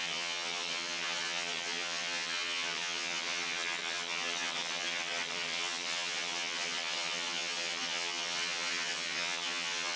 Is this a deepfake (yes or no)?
yes